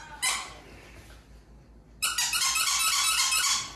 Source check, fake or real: real